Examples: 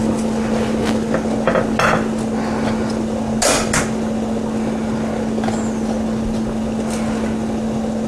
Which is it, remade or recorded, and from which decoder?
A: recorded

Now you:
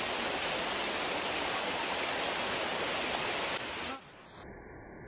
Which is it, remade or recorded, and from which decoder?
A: recorded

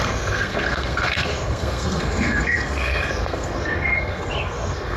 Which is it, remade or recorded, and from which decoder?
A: remade, codec, SNAC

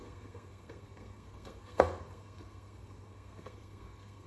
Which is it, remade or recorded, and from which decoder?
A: remade, codec, SNAC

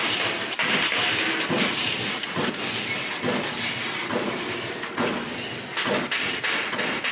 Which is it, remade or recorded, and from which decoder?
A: recorded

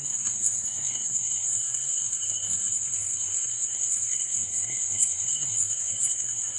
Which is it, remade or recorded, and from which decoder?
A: remade, codec, SNAC